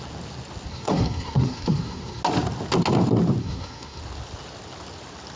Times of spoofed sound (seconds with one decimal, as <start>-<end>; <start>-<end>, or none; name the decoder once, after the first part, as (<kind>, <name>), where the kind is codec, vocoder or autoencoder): 0.7-2.2 (codec, SNAC); 3.4-4.0